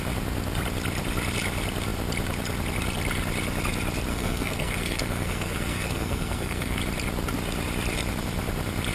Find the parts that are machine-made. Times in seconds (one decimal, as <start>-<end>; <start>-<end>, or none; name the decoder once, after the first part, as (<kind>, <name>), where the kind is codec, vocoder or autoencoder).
4.1-6.8 (codec, SNAC)